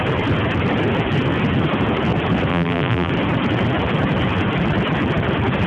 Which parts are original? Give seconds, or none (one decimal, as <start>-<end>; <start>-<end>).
0.0-2.5; 3.1-5.7